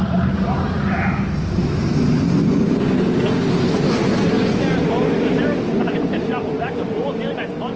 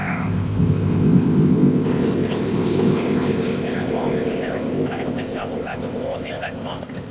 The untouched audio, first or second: first